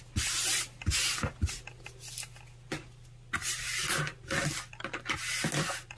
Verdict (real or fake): real